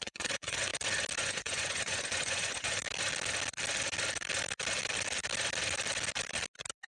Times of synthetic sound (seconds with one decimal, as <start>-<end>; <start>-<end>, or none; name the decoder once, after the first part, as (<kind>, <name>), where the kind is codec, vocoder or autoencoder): 0.0-0.7 (vocoder, Vocos); 1.2-2.8